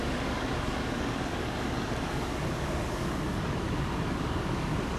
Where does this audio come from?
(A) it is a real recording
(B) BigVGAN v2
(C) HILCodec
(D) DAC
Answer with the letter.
D